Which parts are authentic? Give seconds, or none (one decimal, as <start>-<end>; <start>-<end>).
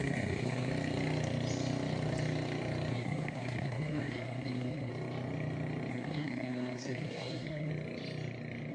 0.7-2.9; 4.9-5.9; 7.7-8.7